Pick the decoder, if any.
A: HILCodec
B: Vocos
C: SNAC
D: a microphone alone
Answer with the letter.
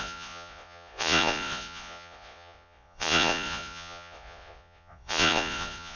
B